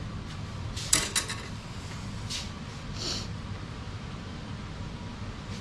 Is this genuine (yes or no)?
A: yes